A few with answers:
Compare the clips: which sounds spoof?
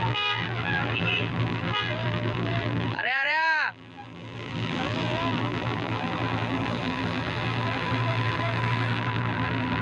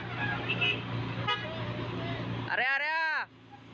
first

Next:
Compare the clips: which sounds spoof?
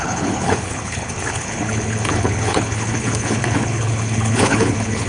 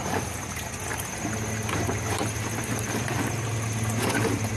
first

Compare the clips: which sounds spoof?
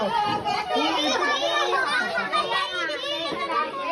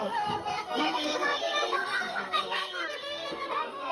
second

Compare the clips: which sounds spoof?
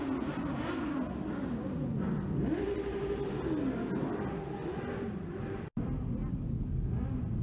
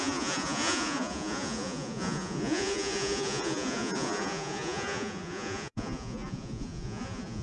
second